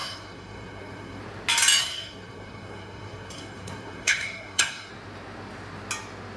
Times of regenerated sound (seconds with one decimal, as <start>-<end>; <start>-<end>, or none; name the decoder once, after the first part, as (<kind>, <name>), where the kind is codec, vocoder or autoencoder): 0.0-1.2 (codec, SNAC); 1.8-4.9